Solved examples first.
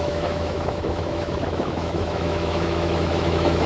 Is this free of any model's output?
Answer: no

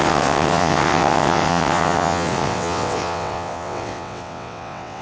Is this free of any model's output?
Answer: no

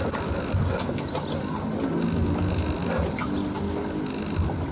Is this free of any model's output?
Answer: yes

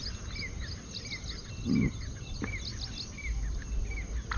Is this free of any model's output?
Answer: yes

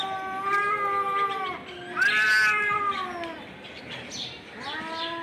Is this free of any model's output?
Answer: yes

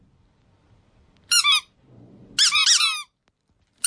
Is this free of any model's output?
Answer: yes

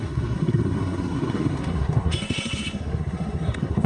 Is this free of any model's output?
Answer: no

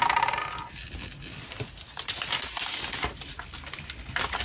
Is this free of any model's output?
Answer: yes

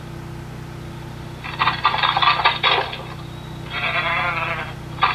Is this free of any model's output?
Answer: yes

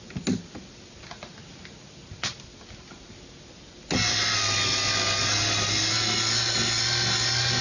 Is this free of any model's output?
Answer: yes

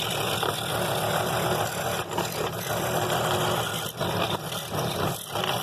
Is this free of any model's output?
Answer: no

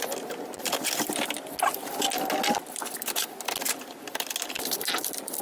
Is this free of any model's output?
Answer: yes